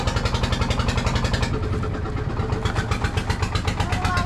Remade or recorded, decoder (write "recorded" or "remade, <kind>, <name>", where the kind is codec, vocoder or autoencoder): recorded